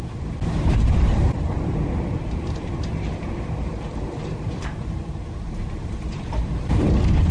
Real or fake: fake